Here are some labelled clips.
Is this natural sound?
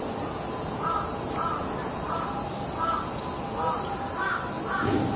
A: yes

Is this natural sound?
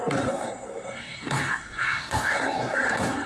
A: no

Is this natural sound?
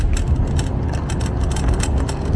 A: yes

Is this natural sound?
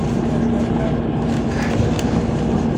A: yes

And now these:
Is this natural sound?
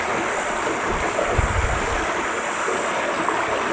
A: yes